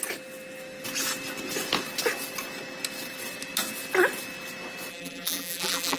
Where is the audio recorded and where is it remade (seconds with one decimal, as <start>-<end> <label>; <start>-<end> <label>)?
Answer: 0.0-4.9 recorded; 4.9-6.0 remade